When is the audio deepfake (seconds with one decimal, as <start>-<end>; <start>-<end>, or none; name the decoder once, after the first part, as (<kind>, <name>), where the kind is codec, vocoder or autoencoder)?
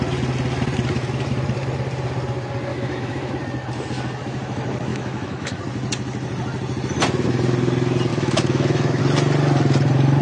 2.7-3.3 (autoencoder, DAC-VAE); 4.9-5.6; 8.1-9.0